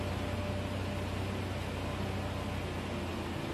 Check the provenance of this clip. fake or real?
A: real